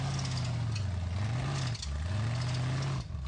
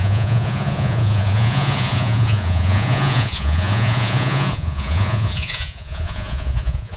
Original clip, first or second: first